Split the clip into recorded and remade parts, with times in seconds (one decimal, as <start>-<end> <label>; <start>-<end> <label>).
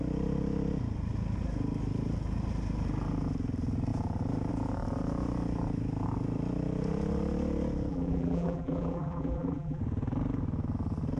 0.0-7.9 recorded; 7.9-9.8 remade; 9.8-11.2 recorded